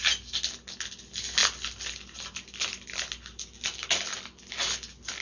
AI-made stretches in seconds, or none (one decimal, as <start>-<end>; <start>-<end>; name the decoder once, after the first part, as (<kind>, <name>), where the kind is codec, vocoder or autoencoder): none